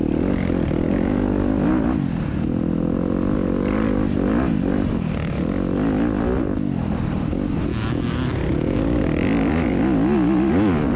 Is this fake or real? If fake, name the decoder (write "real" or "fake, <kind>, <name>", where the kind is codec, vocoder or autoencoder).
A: real